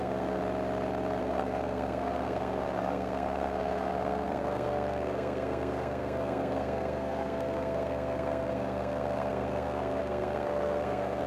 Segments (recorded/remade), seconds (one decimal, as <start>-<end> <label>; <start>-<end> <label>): 0.0-0.4 remade; 0.4-1.2 recorded; 1.2-11.3 remade